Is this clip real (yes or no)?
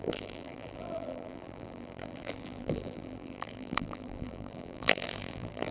no